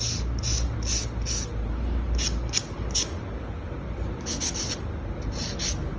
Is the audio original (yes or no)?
yes